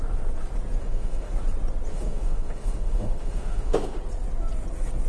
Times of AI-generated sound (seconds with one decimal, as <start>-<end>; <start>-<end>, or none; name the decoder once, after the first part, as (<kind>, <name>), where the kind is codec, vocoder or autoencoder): 0.8-1.3 (autoencoder, DAC-VAE); 1.9-4.0